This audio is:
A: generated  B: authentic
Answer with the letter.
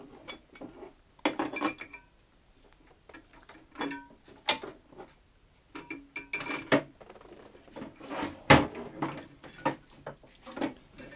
B